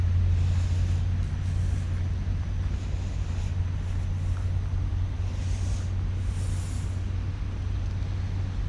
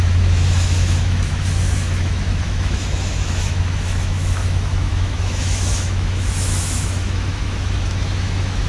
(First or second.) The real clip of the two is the first